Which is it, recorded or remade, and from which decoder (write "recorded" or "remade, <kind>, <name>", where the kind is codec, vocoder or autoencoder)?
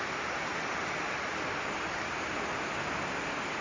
recorded